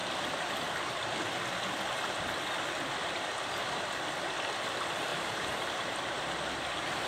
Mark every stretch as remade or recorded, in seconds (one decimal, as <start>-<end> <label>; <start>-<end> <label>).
0.0-5.1 recorded; 5.1-6.4 remade; 6.4-7.1 recorded